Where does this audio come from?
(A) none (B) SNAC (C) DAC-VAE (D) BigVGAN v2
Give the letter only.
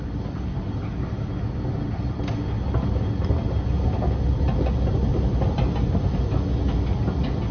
A